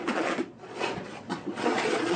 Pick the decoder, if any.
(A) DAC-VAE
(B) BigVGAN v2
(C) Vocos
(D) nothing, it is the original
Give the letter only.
C